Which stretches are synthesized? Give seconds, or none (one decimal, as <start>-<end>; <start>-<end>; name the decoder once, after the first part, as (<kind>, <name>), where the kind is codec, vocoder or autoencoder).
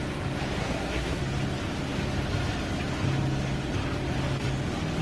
0.6-1.2 (codec, SNAC)